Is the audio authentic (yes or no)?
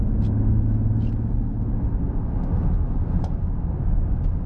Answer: yes